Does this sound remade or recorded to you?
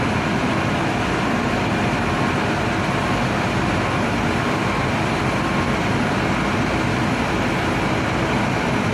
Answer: recorded